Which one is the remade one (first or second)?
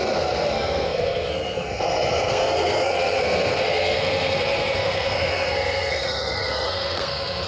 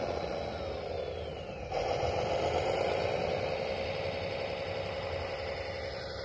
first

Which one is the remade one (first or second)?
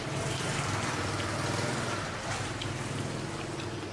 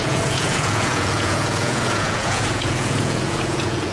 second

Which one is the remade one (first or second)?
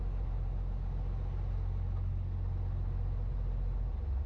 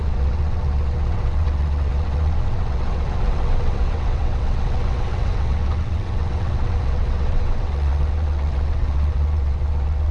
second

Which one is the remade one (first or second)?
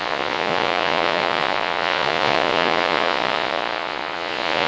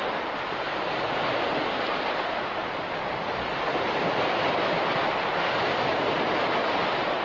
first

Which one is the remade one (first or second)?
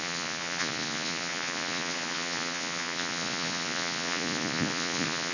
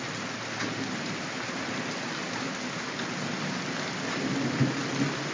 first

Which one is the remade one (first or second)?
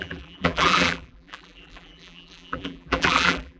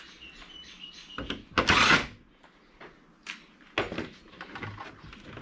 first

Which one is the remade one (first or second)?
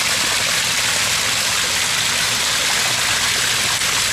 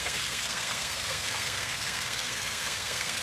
second